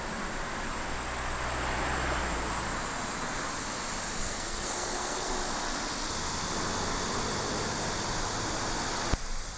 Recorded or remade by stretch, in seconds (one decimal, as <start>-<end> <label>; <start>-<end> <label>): 0.0-4.2 recorded; 4.2-5.3 remade; 5.3-9.6 recorded